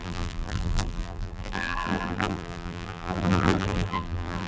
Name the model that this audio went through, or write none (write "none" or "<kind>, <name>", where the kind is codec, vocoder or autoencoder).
vocoder, BigVGAN v2